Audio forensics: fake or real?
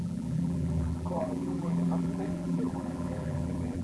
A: fake